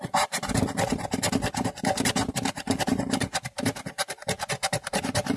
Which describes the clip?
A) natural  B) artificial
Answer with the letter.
B